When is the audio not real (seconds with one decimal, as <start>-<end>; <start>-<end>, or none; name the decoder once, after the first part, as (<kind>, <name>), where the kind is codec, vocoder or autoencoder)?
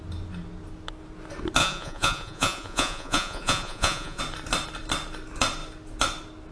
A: 1.6-4.2 (vocoder, Vocos)